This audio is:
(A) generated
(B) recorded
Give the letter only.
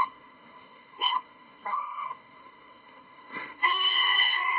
A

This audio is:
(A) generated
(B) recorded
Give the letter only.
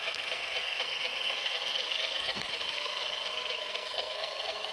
A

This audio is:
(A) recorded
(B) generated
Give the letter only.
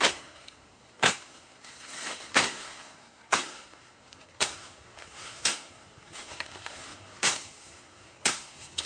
B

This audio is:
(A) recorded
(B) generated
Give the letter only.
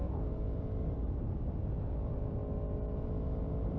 A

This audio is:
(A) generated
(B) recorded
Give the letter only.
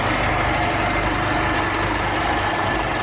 B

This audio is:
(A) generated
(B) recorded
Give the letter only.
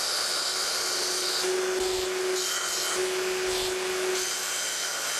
B